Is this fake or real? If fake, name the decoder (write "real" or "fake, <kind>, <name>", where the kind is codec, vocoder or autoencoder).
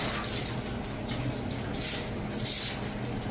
real